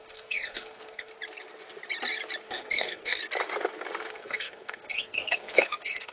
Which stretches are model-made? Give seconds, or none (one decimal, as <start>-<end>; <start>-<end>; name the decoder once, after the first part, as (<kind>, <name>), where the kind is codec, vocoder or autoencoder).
0.0-1.1 (codec, SNAC); 2.4-3.2; 4.1-6.1